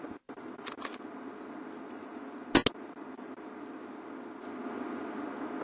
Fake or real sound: real